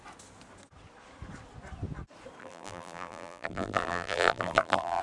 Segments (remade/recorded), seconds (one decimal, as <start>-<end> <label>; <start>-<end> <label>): 0.0-2.4 recorded; 2.4-5.0 remade